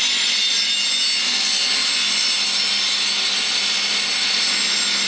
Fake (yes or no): no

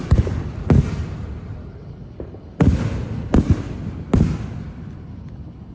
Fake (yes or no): no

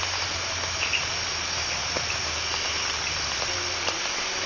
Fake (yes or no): no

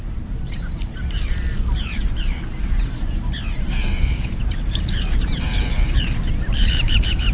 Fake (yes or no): yes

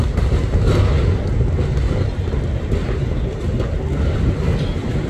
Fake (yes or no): no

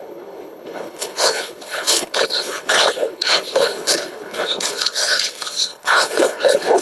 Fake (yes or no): yes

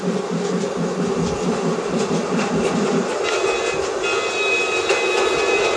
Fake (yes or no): no